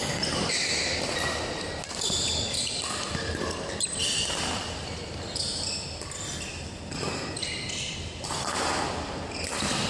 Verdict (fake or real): real